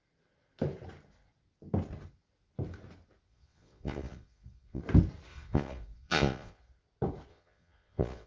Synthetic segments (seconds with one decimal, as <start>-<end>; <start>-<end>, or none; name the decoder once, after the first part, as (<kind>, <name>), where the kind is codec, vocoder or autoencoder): 3.3-4.8 (vocoder, Vocos); 5.3-6.6; 7.3-8.3